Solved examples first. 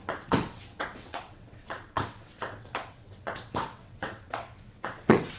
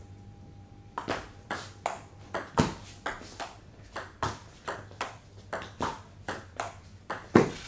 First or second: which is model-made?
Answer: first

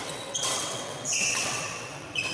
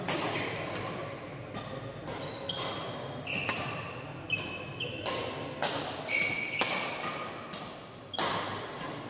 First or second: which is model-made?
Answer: first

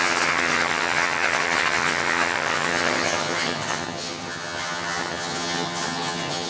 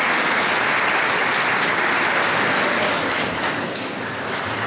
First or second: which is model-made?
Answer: first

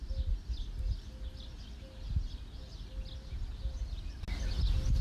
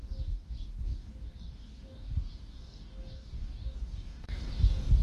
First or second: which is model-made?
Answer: second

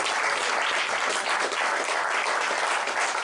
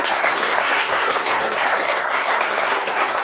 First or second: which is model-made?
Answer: second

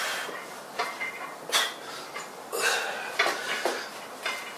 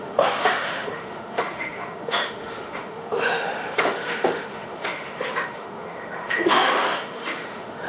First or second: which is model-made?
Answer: second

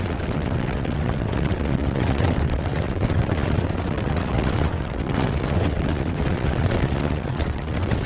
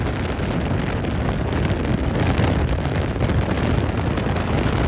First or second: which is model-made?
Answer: first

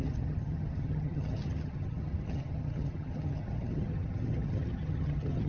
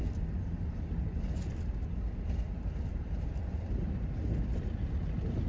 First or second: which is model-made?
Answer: first